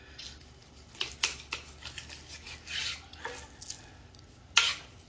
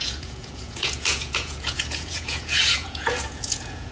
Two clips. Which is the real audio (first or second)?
first